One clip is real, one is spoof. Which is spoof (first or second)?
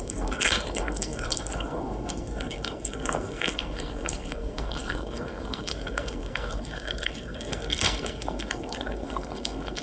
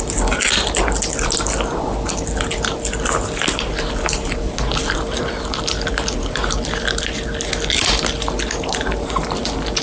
first